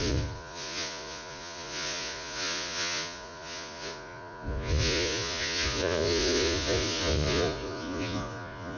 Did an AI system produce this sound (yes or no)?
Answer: yes